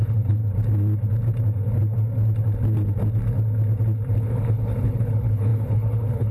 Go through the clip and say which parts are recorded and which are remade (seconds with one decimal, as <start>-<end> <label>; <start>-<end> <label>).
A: 0.0-0.4 remade; 0.4-4.2 recorded; 4.2-6.3 remade